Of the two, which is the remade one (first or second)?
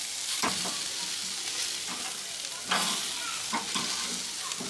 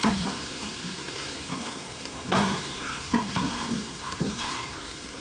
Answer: second